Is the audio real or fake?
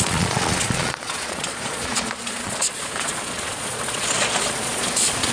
fake